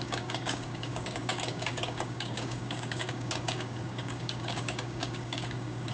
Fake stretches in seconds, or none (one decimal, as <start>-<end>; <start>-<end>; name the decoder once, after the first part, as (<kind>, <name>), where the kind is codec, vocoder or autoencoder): 0.0-5.9 (codec, DAC)